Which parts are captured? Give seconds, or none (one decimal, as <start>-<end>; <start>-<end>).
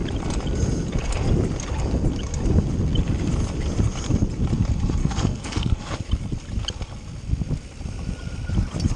0.0-5.0; 5.8-9.0